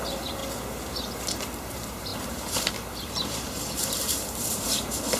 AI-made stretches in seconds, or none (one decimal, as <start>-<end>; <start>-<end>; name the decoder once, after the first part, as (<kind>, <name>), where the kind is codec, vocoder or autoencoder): 0.0-0.4 (vocoder, BigVGAN v2); 1.7-5.2